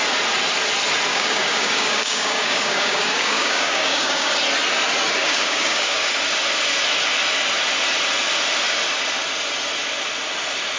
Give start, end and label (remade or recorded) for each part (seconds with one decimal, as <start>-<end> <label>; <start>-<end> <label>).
0.0-1.1 recorded; 1.1-4.3 remade; 4.3-5.2 recorded; 5.2-6.1 remade; 6.1-10.8 recorded